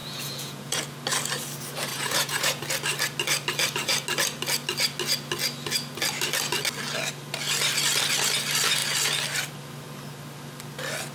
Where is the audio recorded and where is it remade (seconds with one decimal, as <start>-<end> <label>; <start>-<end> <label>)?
0.0-0.8 remade; 0.8-1.9 recorded; 1.9-2.6 remade; 2.6-11.1 recorded